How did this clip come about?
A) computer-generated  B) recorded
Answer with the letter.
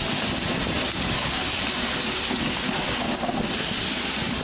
B